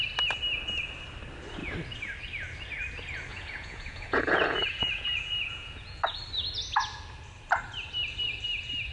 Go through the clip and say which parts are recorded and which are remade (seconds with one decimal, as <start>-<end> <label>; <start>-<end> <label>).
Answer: 0.0-3.3 recorded; 3.3-6.0 remade; 6.0-8.9 recorded